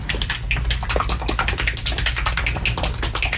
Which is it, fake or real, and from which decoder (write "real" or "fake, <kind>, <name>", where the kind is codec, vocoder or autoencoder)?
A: real